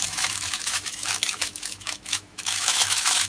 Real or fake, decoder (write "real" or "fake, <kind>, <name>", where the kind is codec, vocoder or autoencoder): fake, autoencoder, DAC-VAE